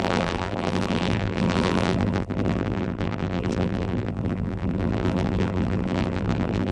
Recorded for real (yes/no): no